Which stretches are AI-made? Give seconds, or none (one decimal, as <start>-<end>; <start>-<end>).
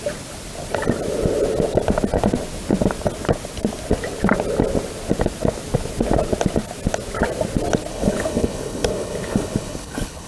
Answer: 7.9-10.3